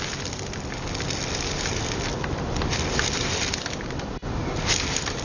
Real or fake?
real